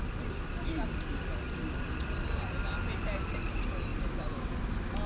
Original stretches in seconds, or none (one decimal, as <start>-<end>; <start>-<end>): 0.0-5.1